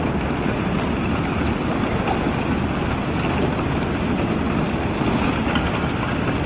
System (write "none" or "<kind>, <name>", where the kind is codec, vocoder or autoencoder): none